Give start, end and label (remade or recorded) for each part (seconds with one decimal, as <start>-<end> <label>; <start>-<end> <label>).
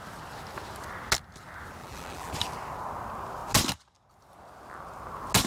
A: 0.0-1.8 recorded; 1.8-2.3 remade; 2.3-5.5 recorded